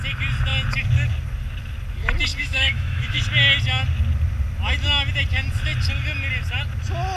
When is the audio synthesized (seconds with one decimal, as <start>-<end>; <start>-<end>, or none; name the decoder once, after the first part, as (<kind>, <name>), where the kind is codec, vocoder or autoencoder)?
2.4-3.2 (autoencoder, DAC-VAE)

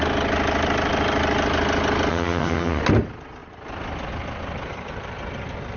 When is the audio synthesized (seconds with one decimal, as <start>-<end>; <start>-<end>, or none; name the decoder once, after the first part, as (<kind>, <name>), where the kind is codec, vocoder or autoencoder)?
2.1-2.8 (vocoder, HiFi-GAN)